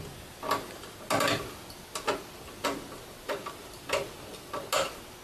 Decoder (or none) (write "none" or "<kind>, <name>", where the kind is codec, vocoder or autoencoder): none